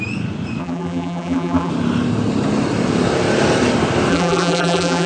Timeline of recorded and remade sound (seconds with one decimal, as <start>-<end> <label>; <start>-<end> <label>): 0.0-0.6 recorded; 0.6-1.7 remade; 1.7-4.1 recorded; 4.1-5.1 remade